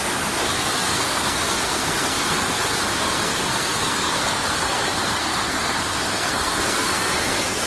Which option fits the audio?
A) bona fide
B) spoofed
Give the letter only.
B